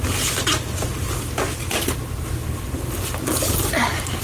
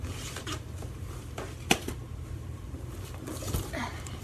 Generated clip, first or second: second